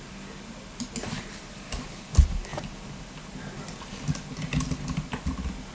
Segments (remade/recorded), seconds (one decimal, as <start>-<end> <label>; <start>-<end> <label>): 0.0-5.7 recorded